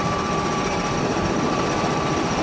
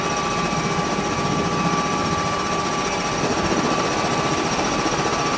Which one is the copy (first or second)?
first